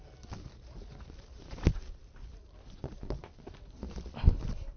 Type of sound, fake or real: real